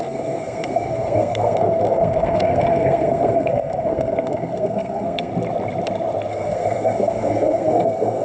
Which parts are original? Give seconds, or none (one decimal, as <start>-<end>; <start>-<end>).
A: 5.3-6.3